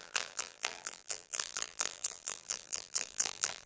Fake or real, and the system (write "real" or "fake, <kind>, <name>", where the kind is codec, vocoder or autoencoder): fake, vocoder, BigVGAN v2